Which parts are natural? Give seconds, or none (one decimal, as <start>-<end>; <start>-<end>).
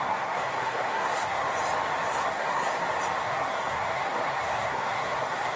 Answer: 1.5-2.1; 2.7-3.2